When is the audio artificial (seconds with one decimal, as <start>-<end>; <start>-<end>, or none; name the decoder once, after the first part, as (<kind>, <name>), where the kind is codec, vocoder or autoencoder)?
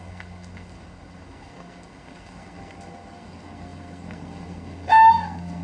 0.0-5.6 (codec, SNAC)